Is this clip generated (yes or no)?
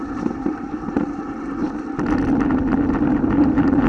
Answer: no